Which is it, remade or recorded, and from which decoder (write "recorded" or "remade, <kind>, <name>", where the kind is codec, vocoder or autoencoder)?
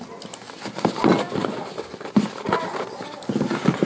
recorded